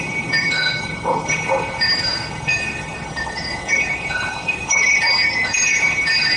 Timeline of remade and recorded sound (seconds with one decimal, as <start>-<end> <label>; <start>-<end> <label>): 0.0-6.4 remade